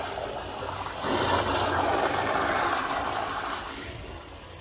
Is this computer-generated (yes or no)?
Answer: yes